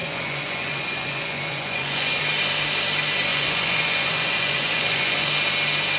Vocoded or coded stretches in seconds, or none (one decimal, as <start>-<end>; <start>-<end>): 0.0-2.2; 3.3-5.3